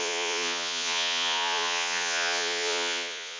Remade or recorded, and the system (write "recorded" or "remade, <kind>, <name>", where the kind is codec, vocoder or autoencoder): remade, vocoder, Vocos